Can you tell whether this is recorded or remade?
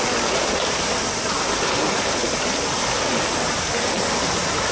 recorded